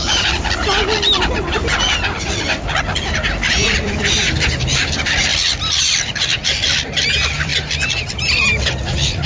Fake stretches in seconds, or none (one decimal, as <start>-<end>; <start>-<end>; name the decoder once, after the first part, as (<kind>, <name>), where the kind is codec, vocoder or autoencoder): 0.0-0.6 (vocoder, BigVGAN v2); 1.4-5.3; 5.8-7.5; 8.6-9.3